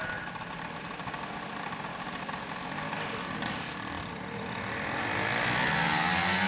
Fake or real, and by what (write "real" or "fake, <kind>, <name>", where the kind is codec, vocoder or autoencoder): real